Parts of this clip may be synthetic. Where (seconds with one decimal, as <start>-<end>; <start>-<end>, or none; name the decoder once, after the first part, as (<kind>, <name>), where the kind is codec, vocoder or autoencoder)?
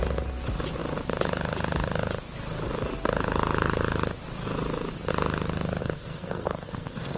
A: 5.8-7.2 (codec, SNAC)